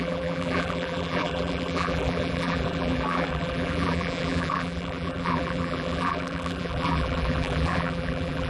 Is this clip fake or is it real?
fake